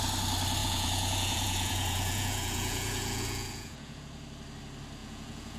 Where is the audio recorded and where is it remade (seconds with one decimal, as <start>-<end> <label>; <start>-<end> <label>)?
0.0-0.6 recorded; 0.6-4.0 remade; 4.0-5.0 recorded; 5.0-5.6 remade